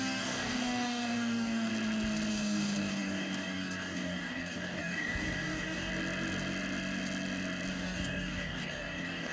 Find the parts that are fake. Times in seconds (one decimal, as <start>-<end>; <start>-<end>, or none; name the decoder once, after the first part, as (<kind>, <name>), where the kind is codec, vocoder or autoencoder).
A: 0.0-1.7 (codec, DAC); 2.3-5.9; 7.7-9.3